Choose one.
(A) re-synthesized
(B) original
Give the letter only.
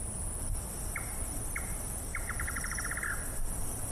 B